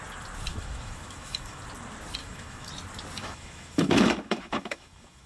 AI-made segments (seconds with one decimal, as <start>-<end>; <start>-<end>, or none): 0.5-1.6; 2.2-2.7; 3.2-5.3